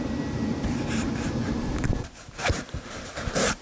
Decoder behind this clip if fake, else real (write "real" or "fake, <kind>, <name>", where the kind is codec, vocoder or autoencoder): fake, vocoder, BigVGAN v2